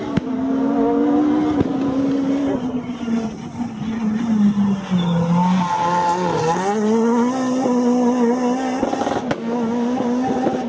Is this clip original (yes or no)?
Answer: yes